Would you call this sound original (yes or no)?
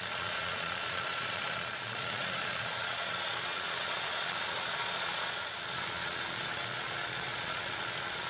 no